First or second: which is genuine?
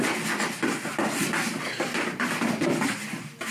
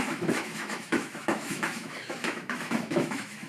first